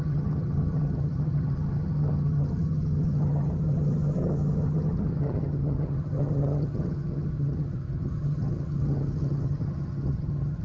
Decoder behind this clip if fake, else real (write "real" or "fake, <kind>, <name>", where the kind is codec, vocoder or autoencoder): fake, vocoder, HiFi-GAN